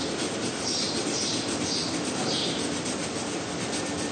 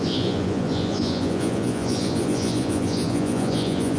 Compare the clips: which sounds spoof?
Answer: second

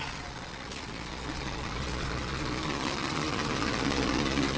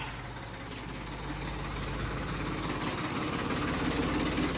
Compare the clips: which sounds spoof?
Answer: first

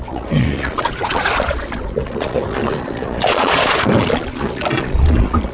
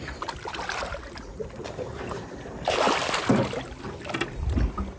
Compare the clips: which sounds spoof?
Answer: first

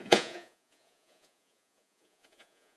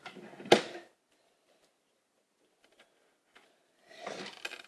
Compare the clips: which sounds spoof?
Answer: first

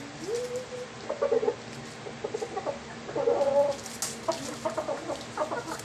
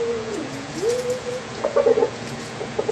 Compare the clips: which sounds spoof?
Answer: second